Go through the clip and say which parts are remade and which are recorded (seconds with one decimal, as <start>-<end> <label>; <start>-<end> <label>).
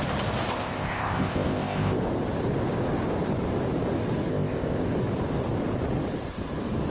0.0-0.5 recorded; 0.5-2.0 remade; 2.0-4.3 recorded; 4.3-4.8 remade; 4.8-6.9 recorded